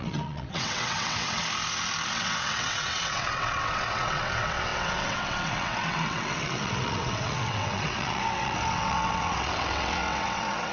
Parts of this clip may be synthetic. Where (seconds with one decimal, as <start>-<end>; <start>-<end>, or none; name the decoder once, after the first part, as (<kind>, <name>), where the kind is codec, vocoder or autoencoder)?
0.0-1.4 (vocoder, WaveNeXt); 2.1-10.7